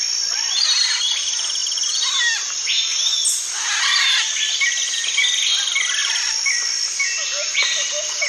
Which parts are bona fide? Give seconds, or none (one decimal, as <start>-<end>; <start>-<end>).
0.0-8.3